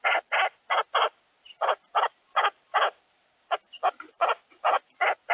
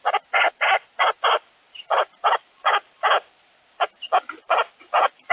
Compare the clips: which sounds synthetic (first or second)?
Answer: second